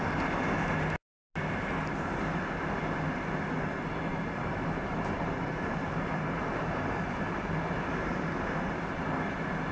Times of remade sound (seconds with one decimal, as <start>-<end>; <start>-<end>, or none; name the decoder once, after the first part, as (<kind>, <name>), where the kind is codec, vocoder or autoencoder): 4.1-9.0 (vocoder, BigVGAN v2)